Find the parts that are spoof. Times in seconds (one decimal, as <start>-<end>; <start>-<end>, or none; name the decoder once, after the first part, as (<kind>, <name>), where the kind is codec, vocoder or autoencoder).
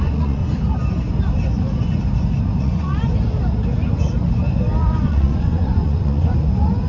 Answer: 0.0-0.4 (vocoder, Vocos); 2.6-3.0; 4.8-6.9